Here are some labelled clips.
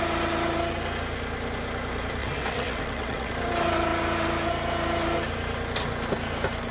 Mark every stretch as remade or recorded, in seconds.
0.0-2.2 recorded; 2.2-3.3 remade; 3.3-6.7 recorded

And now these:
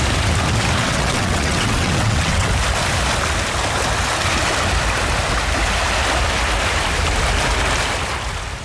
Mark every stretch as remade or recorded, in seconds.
0.0-0.8 recorded; 0.8-2.5 remade; 2.5-8.6 recorded

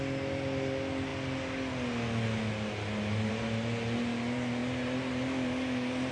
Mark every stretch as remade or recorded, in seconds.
0.0-6.1 recorded

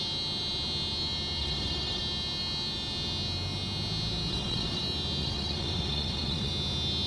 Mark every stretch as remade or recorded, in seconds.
0.0-1.4 recorded; 1.4-2.0 remade; 2.0-4.3 recorded; 4.3-4.8 remade; 4.8-5.2 recorded; 5.2-6.5 remade; 6.5-7.1 recorded

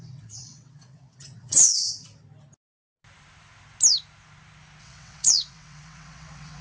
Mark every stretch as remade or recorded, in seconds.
0.0-1.9 remade; 1.9-4.8 recorded; 4.8-6.6 remade

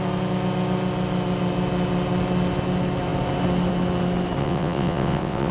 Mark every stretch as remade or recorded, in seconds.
0.0-4.4 recorded; 4.4-5.5 remade

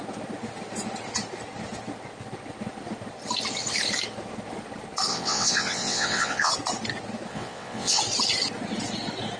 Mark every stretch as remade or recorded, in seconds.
0.0-5.1 recorded; 5.1-6.5 remade; 6.5-7.3 recorded; 7.3-8.0 remade; 8.0-9.4 recorded

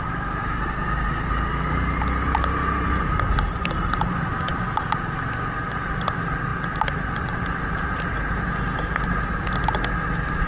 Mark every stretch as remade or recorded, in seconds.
0.0-10.5 recorded